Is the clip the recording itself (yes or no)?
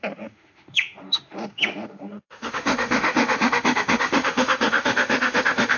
no